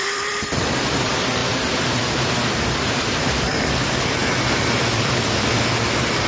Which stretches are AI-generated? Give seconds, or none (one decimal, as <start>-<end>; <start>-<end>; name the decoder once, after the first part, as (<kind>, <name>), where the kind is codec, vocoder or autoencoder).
0.0-6.3 (vocoder, BigVGAN v2)